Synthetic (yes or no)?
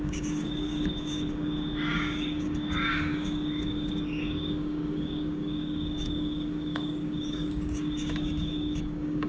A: yes